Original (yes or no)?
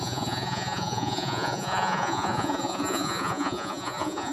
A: no